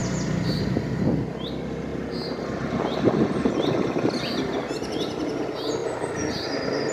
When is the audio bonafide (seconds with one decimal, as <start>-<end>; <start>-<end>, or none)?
1.1-1.9; 2.7-6.9